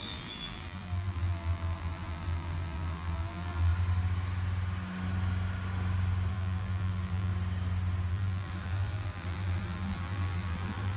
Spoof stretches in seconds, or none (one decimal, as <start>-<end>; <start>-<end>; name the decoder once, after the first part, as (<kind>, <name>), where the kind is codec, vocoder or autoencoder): 0.0-3.7 (vocoder, BigVGAN v2); 6.3-7.3; 8.1-11.0